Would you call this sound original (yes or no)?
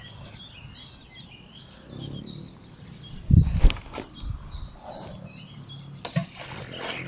yes